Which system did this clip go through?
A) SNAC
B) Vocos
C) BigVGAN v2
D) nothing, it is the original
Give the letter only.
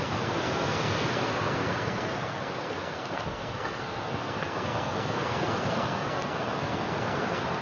A